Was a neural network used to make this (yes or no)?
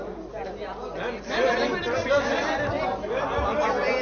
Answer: no